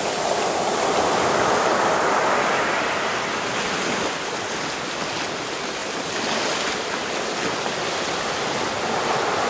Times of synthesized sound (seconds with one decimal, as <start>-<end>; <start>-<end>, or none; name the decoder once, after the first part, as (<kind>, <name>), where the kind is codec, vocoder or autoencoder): none